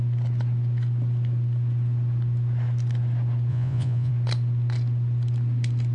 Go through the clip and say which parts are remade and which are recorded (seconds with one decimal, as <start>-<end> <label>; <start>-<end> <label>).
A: 0.0-3.5 recorded; 3.5-4.1 remade; 4.1-5.9 recorded